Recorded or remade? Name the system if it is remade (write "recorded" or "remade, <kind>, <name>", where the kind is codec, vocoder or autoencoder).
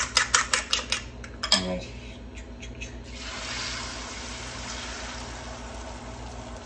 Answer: recorded